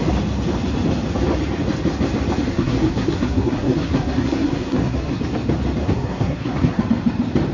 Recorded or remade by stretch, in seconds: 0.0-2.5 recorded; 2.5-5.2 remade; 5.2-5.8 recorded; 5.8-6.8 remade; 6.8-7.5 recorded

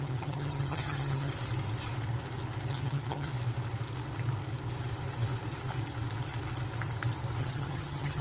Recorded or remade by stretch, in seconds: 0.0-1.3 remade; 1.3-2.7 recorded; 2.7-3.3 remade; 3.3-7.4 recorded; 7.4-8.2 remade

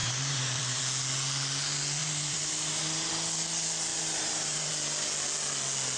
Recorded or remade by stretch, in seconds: 0.0-0.8 remade; 0.8-2.0 recorded; 2.0-3.1 remade; 3.1-3.9 recorded; 3.9-4.7 remade; 4.7-6.0 recorded

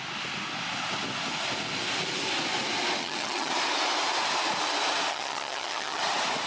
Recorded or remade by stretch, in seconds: 0.0-3.0 recorded; 3.0-3.5 remade; 3.5-5.1 recorded; 5.1-6.0 remade; 6.0-6.5 recorded

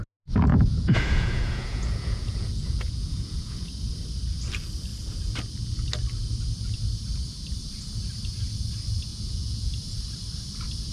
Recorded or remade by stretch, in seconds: 0.0-0.5 recorded; 0.5-3.9 remade; 3.9-9.1 recorded; 9.1-9.7 remade; 9.7-10.9 recorded

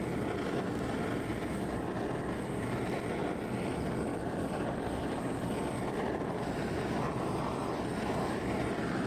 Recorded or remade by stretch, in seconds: 0.0-1.3 recorded; 1.3-1.9 remade; 1.9-4.1 recorded; 4.1-5.5 remade; 5.5-9.1 recorded